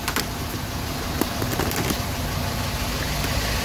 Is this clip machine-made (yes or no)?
no